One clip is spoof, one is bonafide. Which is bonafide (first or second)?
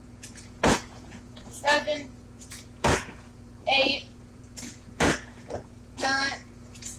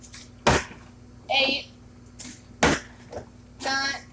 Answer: second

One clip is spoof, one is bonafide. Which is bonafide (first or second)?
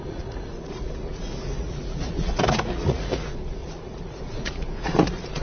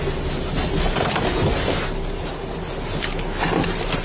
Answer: second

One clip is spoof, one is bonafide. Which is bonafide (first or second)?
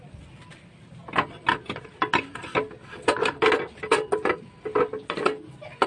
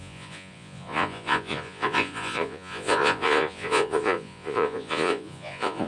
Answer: first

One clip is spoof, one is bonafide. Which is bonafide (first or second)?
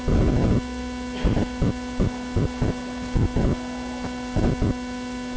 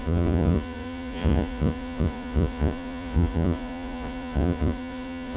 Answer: first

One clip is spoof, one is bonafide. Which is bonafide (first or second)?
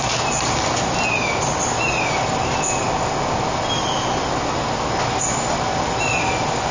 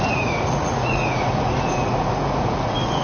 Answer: first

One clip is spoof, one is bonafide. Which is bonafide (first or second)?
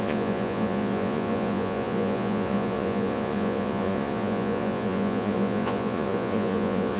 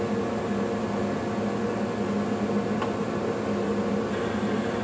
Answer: second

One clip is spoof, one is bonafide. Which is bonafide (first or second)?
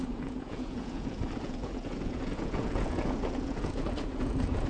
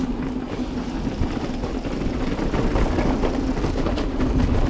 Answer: second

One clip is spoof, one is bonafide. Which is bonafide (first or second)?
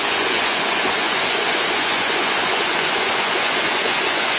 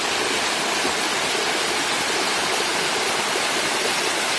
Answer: second